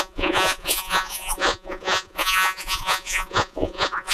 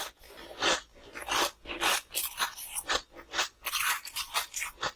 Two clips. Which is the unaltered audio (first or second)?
second